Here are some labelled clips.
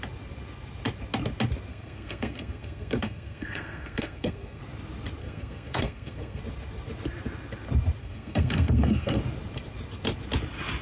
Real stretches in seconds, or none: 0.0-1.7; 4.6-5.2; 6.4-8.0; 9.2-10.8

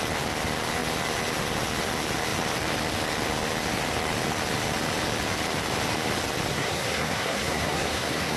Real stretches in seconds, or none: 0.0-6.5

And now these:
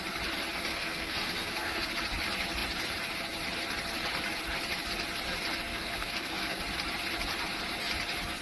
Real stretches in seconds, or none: 0.0-0.7; 1.9-5.7; 6.6-8.4

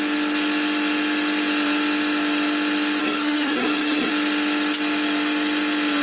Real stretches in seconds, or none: 0.0-3.0; 4.1-6.0